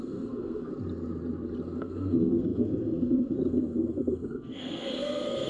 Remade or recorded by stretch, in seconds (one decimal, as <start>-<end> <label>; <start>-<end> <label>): 0.0-0.7 remade; 0.7-1.8 recorded; 1.8-5.5 remade